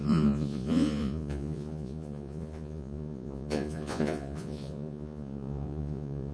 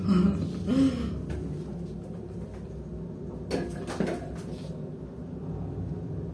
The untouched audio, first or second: second